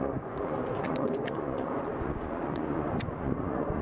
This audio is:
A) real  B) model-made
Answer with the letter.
B